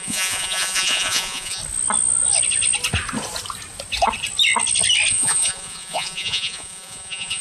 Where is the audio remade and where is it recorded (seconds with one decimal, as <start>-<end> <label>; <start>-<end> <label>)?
0.0-1.6 remade; 1.6-5.1 recorded; 5.1-7.4 remade